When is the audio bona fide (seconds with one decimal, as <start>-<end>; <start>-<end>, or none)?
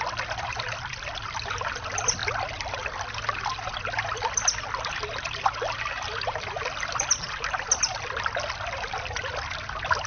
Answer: 0.0-10.1